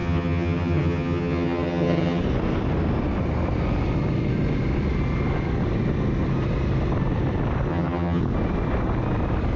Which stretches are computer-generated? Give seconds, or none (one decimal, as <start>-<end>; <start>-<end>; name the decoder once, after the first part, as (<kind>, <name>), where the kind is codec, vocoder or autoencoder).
0.0-2.2 (vocoder, HiFi-GAN); 7.7-8.2